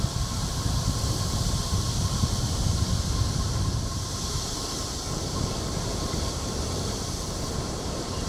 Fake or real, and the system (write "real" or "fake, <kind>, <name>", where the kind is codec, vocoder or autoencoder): fake, vocoder, BigVGAN v2